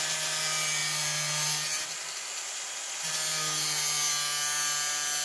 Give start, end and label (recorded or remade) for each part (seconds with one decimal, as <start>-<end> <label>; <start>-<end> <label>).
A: 0.0-5.2 recorded